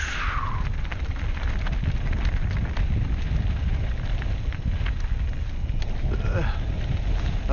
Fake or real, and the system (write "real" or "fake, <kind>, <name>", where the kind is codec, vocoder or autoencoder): real